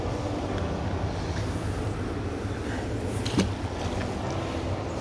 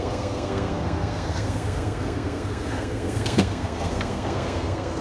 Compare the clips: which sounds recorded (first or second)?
first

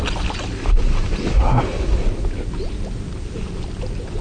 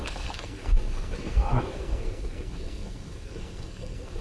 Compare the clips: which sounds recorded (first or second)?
first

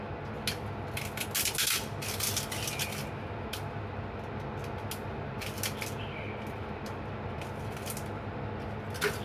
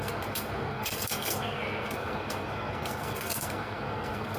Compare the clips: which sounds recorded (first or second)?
first